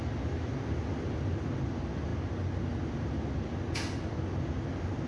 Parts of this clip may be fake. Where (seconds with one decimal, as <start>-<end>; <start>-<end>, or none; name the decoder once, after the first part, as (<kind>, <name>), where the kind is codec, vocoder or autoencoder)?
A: none